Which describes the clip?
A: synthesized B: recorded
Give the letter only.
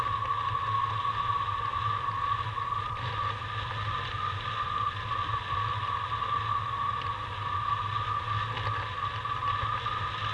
B